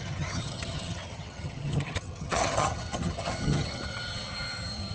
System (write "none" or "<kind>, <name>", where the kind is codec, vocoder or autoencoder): vocoder, HiFi-GAN